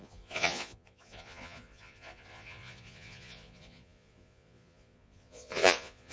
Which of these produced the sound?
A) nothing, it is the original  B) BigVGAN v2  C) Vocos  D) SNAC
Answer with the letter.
C